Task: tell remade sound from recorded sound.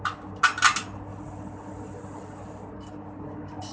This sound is recorded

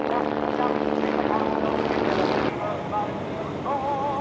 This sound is recorded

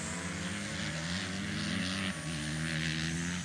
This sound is recorded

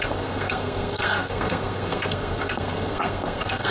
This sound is remade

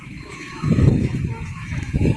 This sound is remade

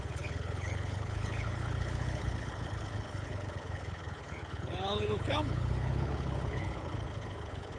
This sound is remade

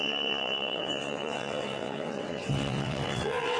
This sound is remade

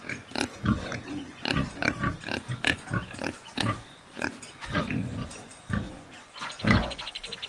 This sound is remade